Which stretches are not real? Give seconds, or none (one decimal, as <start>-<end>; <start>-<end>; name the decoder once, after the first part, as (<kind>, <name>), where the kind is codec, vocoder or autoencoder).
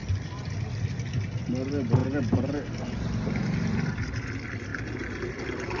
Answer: none